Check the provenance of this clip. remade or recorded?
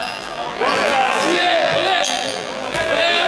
remade